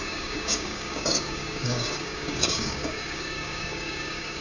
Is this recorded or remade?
remade